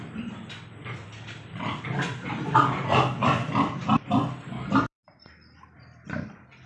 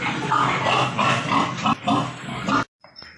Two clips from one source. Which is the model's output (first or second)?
first